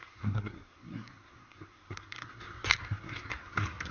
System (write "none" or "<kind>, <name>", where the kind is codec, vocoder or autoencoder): codec, SNAC